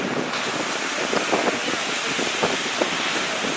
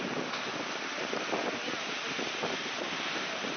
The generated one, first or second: second